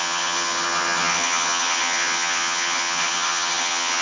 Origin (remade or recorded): remade